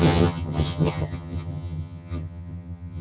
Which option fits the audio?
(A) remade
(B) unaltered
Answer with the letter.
A